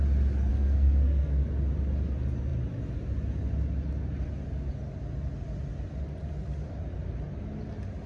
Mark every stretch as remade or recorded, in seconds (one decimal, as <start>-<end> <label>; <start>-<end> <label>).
0.0-0.5 recorded; 0.5-1.5 remade; 1.5-8.1 recorded